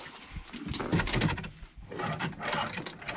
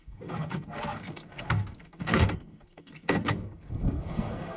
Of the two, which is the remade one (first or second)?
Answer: second